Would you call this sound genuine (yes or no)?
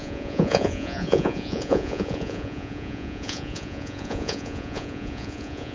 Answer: no